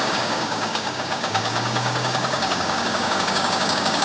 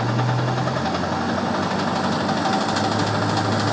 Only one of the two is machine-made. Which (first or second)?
first